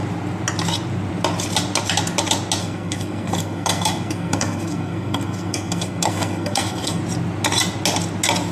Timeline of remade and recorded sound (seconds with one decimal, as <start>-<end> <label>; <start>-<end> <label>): 0.0-2.6 recorded; 2.6-7.0 remade; 7.0-8.5 recorded